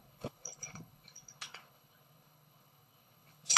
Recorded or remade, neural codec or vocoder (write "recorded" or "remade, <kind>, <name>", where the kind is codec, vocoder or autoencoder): remade, codec, HILCodec